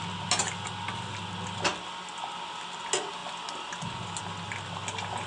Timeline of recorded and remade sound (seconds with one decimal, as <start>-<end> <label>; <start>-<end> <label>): 0.0-5.3 recorded